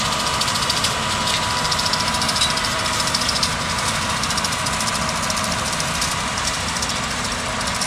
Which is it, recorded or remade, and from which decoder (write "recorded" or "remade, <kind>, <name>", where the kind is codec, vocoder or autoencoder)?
recorded